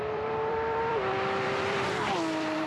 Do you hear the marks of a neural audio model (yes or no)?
yes